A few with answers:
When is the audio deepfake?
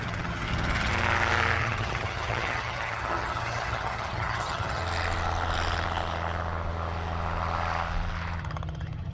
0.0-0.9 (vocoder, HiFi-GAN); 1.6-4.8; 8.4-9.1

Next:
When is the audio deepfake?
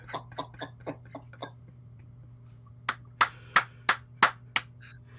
1.4-2.7 (vocoder, BigVGAN v2)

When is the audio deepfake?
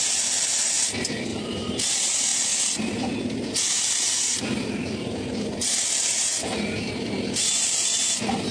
1.3-1.9 (vocoder, BigVGAN v2)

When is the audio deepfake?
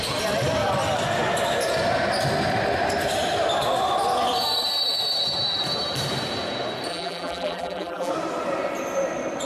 6.9-8.1 (vocoder, BigVGAN v2)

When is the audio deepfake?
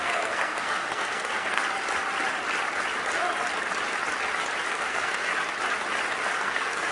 0.0-1.6 (codec, SNAC); 4.7-5.3; 6.4-6.9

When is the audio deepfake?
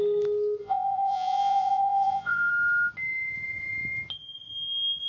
0.6-2.5 (vocoder, Vocos)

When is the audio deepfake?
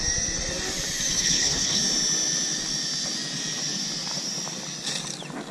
1.1-1.8 (codec, HILCodec)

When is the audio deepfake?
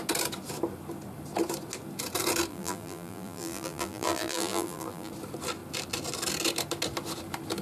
2.5-5.1 (vocoder, BigVGAN v2)